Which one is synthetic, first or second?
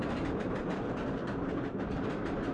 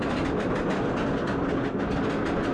first